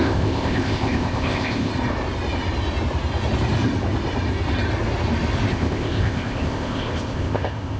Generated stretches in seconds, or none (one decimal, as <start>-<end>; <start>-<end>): 0.0-1.7; 5.5-7.8